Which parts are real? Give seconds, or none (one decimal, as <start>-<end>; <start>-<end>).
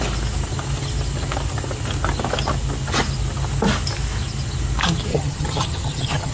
0.0-5.1